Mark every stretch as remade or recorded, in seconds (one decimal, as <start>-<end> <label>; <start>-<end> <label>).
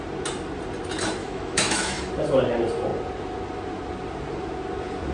0.0-1.2 recorded; 1.2-2.1 remade; 2.1-5.1 recorded